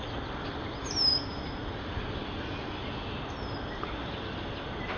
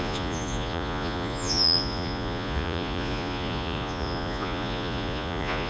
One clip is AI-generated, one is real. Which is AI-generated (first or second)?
second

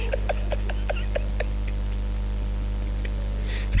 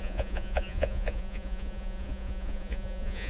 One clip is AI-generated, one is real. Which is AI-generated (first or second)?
second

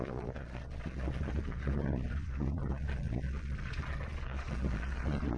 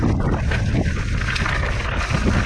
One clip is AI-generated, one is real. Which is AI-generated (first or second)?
first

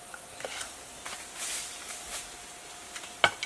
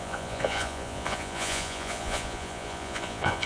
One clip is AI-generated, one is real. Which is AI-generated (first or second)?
second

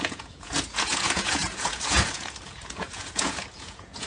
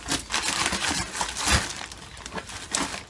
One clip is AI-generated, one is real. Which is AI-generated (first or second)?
first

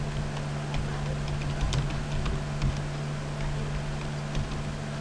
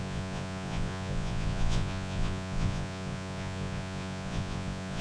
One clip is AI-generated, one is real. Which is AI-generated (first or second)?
second